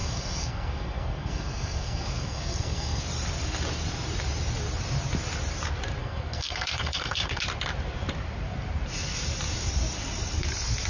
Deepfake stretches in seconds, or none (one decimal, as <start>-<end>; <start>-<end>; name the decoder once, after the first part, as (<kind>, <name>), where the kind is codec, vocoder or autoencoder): 0.0-3.0 (codec, SNAC); 6.0-7.4